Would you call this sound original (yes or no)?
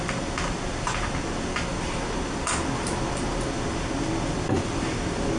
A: yes